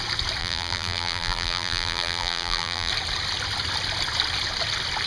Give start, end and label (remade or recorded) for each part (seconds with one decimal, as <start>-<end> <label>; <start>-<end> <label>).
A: 0.0-0.4 recorded; 0.4-2.9 remade; 2.9-5.1 recorded